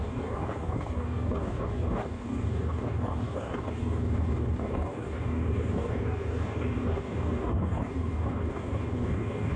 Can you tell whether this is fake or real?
fake